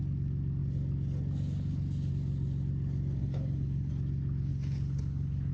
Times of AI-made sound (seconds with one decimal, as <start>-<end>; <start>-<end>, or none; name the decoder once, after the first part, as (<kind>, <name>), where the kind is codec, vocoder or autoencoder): 3.2-3.9 (codec, HILCodec); 4.5-5.5